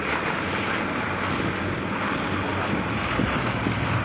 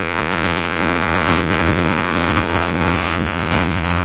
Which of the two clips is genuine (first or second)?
first